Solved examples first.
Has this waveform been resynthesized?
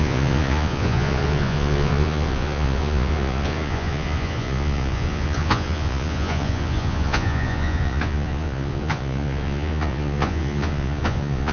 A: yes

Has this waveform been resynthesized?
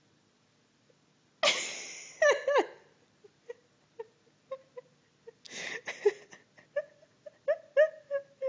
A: no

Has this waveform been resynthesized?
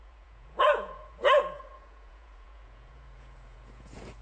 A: yes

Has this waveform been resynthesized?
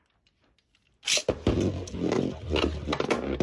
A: no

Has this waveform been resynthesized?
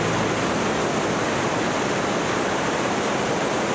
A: no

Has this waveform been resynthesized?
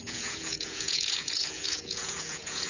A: yes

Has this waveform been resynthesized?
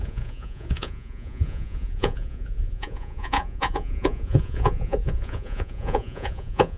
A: yes